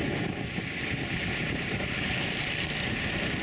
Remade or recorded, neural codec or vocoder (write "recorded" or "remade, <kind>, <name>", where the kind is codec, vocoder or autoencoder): recorded